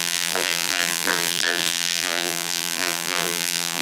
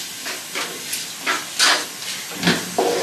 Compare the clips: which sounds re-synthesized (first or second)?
first